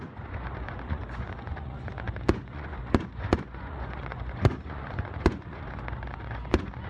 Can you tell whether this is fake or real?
fake